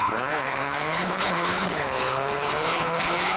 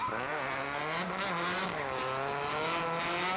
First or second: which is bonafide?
second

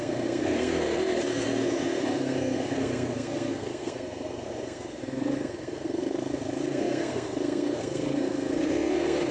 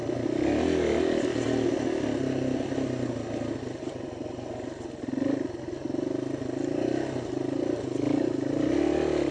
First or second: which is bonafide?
second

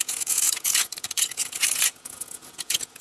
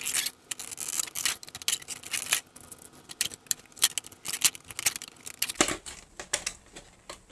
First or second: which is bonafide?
second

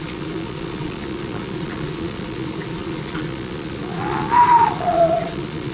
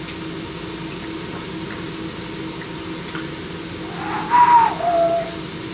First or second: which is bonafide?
second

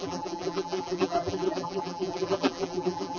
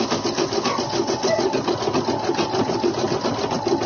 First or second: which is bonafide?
second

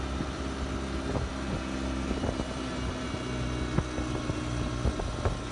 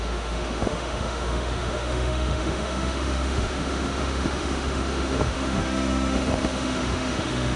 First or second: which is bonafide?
first